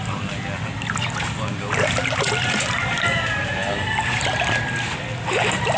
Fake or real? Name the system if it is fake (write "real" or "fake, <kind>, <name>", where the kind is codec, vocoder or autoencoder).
real